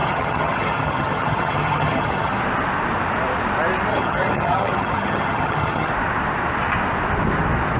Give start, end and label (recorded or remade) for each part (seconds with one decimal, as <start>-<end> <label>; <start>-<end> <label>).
0.0-2.4 remade; 2.4-3.9 recorded; 3.9-5.9 remade; 5.9-7.8 recorded